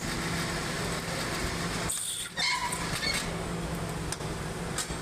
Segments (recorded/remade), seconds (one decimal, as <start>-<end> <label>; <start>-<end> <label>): 0.0-5.0 recorded